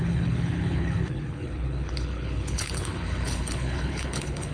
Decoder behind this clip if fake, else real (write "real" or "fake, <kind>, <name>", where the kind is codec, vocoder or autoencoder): fake, codec, HILCodec